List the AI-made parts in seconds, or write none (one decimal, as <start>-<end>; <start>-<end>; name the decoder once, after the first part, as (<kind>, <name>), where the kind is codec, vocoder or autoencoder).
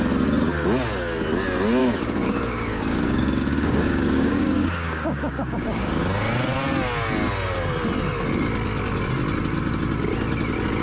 1.8-6.0 (codec, DAC)